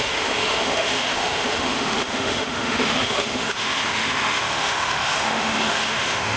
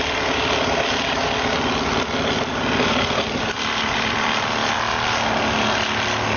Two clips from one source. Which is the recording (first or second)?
second